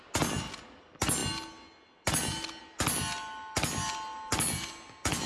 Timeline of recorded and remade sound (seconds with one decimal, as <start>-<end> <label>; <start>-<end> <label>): 0.0-5.3 recorded